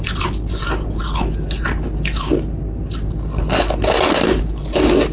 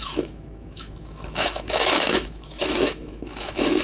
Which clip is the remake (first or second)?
second